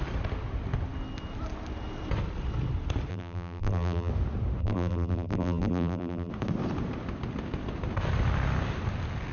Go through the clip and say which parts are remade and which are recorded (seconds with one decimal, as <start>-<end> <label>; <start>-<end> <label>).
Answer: 0.0-3.1 recorded; 3.1-4.1 remade; 4.1-4.6 recorded; 4.6-6.3 remade; 6.3-9.3 recorded